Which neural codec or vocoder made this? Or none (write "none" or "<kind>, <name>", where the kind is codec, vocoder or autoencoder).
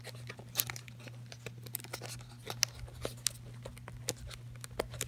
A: none